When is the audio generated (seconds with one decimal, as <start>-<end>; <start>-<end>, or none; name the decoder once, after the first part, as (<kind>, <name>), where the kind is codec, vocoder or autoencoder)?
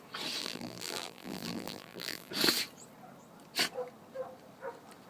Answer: 0.4-2.3 (vocoder, BigVGAN v2)